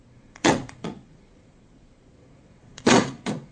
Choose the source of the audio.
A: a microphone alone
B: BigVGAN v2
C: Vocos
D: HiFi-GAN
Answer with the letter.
C